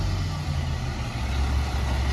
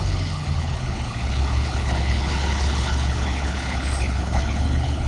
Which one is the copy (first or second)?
second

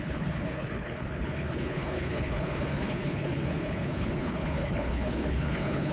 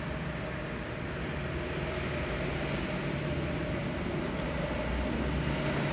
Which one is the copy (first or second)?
first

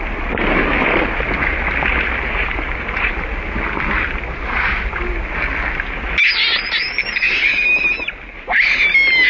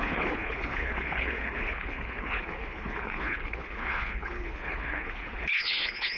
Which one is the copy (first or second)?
second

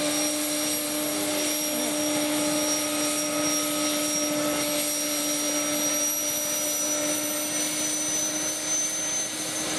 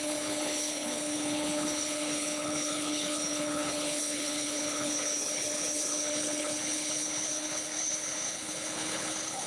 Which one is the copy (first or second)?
second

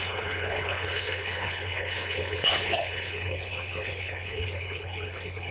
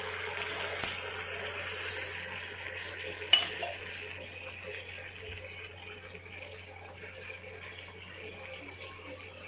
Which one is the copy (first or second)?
first